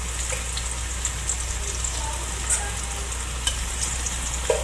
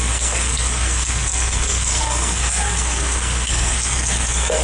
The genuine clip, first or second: first